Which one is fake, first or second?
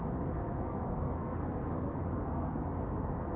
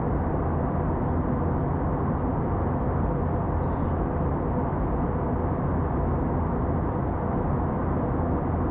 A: first